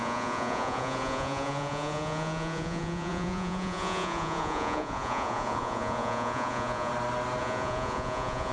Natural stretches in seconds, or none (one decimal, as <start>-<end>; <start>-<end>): 6.9-7.4